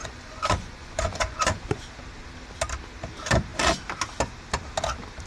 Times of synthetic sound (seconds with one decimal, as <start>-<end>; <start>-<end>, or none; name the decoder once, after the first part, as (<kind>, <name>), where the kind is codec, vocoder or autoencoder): 0.0-1.8 (vocoder, Vocos)